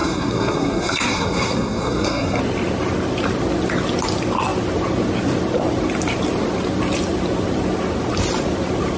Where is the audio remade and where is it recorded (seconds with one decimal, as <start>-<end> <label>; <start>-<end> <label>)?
0.0-2.4 remade; 2.4-9.0 recorded